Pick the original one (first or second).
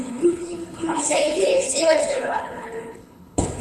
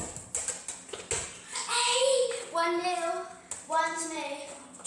second